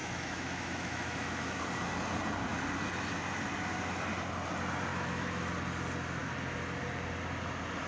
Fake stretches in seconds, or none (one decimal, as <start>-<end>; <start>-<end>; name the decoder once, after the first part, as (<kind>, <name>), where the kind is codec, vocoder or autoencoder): 0.0-1.6 (autoencoder, DAC-VAE); 4.9-5.5